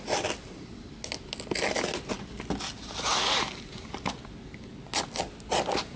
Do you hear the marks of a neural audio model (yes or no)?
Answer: no